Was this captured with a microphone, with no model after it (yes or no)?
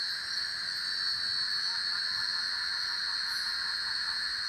yes